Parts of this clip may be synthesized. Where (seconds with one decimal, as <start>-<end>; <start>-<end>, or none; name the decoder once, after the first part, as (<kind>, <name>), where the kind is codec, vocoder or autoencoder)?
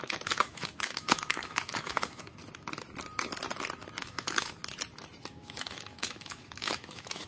0.0-2.4 (autoencoder, DAC-VAE); 4.0-4.6; 5.3-7.3